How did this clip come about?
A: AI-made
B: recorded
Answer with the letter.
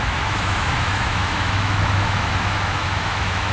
A